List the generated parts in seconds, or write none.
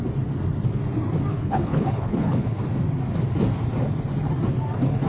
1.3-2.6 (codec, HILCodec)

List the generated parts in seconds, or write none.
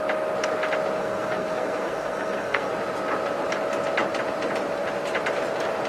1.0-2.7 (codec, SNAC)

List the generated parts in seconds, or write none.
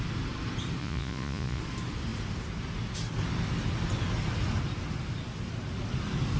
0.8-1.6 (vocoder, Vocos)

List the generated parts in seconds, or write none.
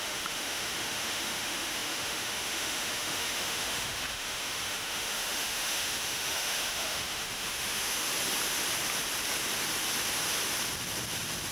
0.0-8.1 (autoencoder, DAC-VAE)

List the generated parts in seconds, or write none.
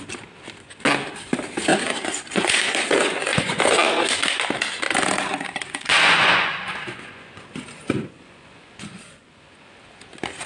1.7-3.6 (vocoder, Vocos); 5.3-9.8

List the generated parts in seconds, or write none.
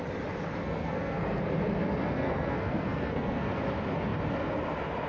0.6-1.4 (codec, SNAC); 1.9-3.6